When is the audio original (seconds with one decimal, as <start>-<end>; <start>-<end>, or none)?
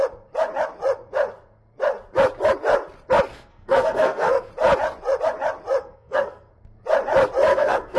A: 0.0-3.3; 4.5-5.8; 6.5-7.5